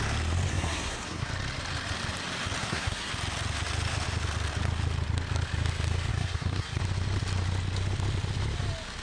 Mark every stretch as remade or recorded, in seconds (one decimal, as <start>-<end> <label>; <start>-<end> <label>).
0.0-0.5 recorded; 0.5-1.3 remade; 1.3-2.6 recorded; 2.6-3.1 remade; 3.1-6.1 recorded; 6.1-6.8 remade; 6.8-9.0 recorded